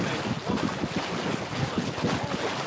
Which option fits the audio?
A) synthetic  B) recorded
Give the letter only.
B